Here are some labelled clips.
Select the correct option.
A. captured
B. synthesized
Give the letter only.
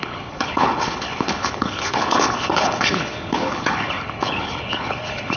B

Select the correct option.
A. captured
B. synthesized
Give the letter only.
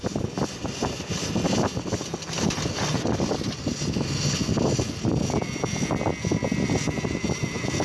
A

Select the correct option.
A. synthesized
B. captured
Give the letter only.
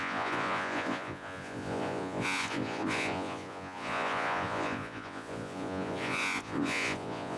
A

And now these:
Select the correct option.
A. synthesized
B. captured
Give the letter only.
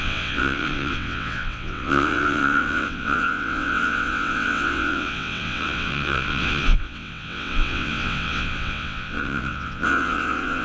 A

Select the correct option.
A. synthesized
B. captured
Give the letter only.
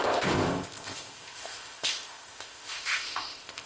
A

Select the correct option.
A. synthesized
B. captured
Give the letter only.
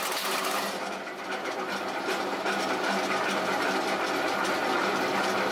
B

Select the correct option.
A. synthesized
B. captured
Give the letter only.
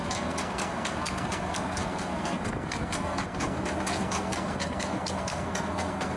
A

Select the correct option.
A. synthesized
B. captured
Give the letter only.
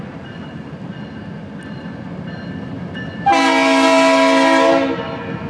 B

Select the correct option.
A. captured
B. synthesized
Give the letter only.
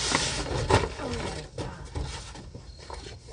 A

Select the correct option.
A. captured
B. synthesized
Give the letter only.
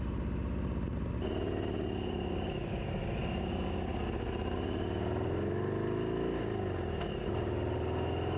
A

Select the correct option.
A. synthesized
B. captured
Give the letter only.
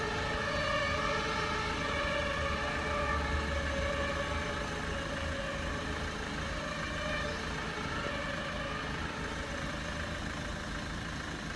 B